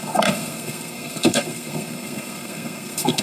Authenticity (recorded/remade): remade